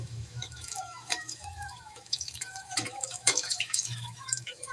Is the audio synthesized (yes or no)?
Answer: yes